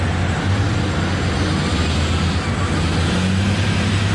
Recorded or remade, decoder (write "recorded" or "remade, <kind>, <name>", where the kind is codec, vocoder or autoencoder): recorded